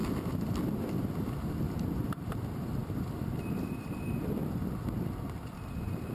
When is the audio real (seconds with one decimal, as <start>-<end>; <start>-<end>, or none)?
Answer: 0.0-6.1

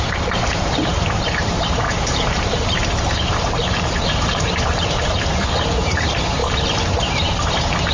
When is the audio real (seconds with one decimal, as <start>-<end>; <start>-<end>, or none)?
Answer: none

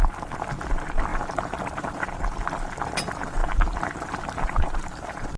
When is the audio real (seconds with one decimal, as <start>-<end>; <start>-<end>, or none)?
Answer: 0.0-1.1; 2.0-3.4

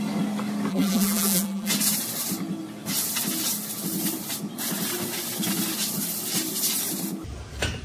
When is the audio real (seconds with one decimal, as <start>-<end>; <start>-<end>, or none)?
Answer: 0.0-0.7; 1.7-7.8

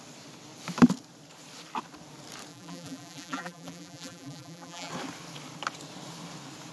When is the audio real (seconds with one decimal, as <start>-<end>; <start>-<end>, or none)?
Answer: 0.0-2.5; 4.9-6.7

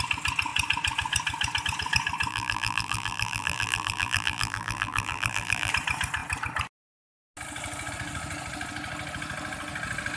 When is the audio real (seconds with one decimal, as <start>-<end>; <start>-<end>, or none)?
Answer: 0.0-2.3; 5.7-10.2

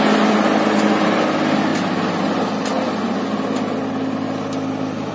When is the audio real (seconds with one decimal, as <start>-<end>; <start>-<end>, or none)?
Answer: 0.0-5.1